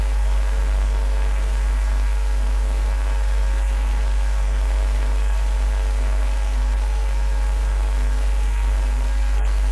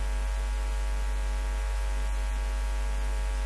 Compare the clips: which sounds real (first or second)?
second